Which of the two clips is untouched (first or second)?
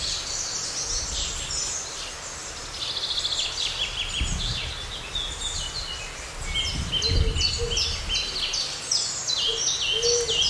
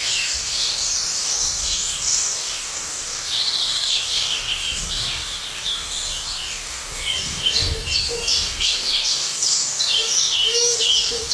first